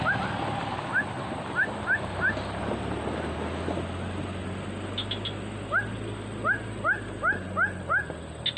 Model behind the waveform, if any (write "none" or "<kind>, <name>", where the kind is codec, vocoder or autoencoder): none